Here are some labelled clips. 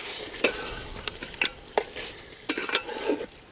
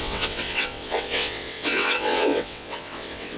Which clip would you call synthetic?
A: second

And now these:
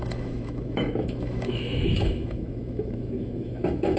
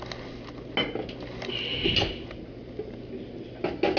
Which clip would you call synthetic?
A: first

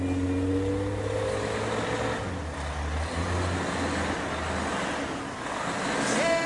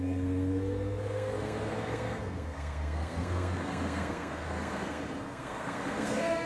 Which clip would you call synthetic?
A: second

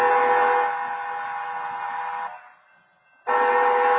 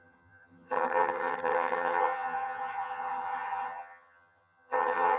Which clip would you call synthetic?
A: second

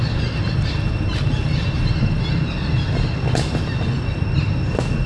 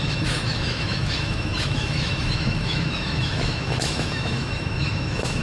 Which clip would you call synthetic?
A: second